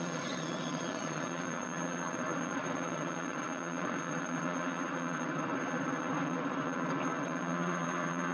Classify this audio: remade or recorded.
remade